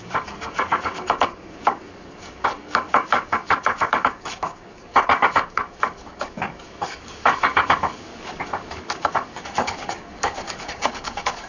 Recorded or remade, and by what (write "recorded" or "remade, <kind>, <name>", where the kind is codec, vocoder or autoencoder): remade, codec, DAC